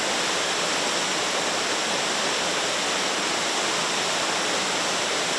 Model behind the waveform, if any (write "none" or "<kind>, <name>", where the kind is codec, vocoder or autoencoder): none